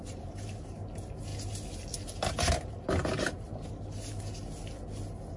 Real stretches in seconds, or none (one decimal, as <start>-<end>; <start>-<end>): 0.0-5.4